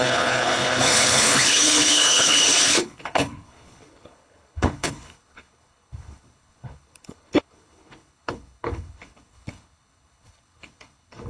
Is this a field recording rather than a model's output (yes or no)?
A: no